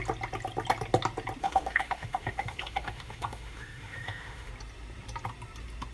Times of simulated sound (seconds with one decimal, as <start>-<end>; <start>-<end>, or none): 1.4-4.5